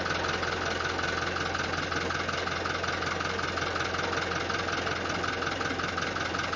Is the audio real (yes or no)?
yes